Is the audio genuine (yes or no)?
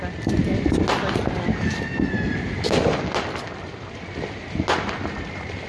yes